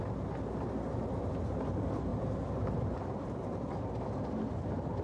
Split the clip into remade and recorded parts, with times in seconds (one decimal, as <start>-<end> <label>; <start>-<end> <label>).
0.0-2.1 recorded; 2.1-3.7 remade; 3.7-5.0 recorded